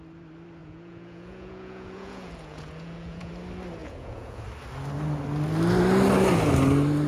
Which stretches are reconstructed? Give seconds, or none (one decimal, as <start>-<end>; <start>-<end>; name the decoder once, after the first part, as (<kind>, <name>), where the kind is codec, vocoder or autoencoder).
0.6-3.3 (vocoder, Vocos); 3.8-4.4

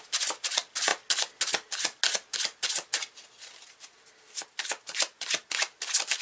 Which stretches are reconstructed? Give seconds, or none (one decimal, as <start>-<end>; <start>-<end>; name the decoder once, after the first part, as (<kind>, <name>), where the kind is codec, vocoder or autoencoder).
none

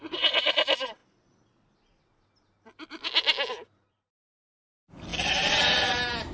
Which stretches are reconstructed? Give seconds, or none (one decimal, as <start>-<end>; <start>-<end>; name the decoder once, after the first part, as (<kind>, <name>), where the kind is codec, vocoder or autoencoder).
0.0-1.0 (vocoder, BigVGAN v2); 3.5-6.3

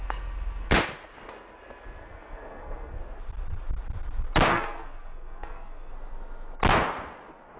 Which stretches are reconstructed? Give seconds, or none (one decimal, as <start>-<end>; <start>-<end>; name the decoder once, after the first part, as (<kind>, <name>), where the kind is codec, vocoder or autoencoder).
0.0-0.7 (codec, SNAC); 2.0-3.0; 4.5-5.9

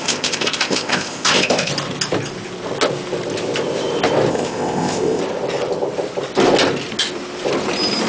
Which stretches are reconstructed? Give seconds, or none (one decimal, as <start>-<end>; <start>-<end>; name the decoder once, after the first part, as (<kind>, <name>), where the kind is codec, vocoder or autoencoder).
0.0-1.7 (codec, ZipCodec); 4.3-5.2

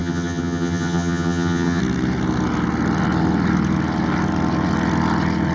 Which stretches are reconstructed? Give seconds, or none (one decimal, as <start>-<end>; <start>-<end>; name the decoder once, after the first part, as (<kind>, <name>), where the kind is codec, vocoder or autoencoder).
0.0-1.8 (vocoder, HiFi-GAN)

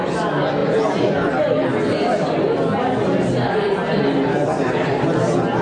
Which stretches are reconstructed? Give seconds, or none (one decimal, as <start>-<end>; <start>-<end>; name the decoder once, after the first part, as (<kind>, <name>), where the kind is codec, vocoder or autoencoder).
none